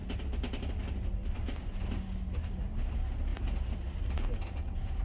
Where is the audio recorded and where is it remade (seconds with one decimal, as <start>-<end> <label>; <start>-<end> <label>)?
0.0-5.0 recorded